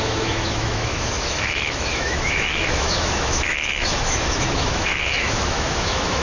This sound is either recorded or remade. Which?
remade